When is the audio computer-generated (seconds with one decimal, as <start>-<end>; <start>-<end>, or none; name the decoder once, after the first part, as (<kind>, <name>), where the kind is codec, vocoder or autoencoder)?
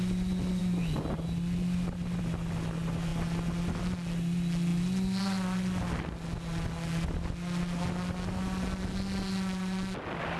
none